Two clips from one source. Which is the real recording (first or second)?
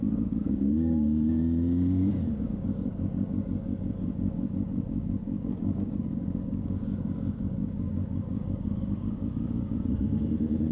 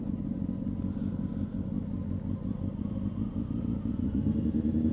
second